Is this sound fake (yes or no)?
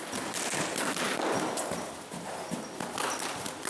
no